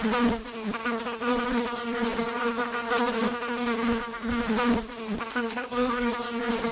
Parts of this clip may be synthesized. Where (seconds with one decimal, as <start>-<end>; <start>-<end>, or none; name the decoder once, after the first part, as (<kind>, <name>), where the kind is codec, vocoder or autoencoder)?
5.3-6.1 (codec, SNAC)